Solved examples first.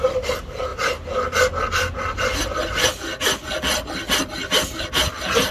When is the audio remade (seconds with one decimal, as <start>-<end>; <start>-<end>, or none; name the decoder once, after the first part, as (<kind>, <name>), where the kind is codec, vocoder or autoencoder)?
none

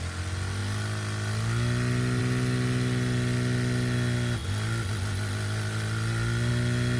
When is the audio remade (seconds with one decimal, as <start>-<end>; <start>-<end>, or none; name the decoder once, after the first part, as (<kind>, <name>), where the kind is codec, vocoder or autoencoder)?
none

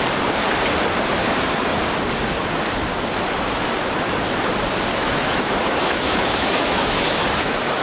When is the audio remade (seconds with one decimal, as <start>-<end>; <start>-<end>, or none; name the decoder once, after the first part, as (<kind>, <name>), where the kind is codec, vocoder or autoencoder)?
4.9-7.8 (autoencoder, DAC-VAE)

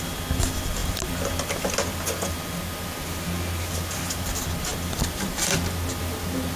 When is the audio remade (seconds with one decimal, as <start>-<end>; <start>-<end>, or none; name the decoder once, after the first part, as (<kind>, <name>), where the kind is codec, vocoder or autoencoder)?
none

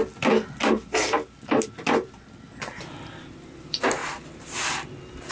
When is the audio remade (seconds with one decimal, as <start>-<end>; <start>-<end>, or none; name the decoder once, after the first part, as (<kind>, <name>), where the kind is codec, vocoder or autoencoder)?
none

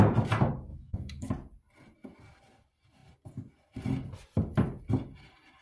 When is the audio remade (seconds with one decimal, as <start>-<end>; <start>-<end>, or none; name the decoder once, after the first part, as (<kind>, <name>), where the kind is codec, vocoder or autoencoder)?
0.7-1.3 (autoencoder, DAC-VAE)

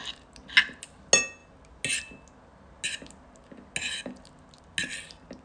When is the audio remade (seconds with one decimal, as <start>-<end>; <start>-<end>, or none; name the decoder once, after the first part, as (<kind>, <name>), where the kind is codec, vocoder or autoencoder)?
none

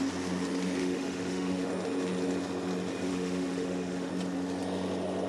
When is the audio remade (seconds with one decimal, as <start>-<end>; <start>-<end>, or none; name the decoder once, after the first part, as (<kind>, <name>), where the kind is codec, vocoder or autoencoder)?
0.8-1.7 (autoencoder, DAC-VAE); 3.1-4.1